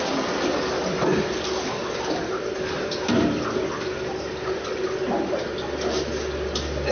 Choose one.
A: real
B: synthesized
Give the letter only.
A